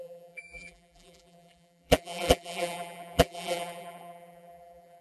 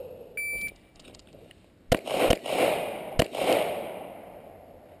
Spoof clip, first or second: first